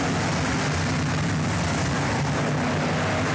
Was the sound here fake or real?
real